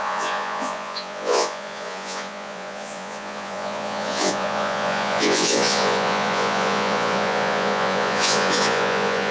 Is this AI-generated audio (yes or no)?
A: yes